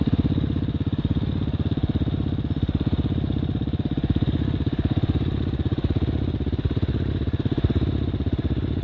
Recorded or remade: recorded